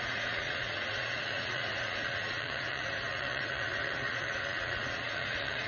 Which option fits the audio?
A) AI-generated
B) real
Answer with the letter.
A